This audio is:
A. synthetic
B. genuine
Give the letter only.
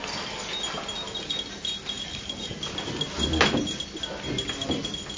B